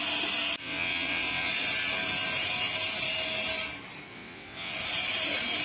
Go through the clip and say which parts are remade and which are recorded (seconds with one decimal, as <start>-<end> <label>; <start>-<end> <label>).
0.0-0.6 recorded; 0.6-1.5 remade; 1.5-4.1 recorded; 4.1-4.7 remade; 4.7-5.6 recorded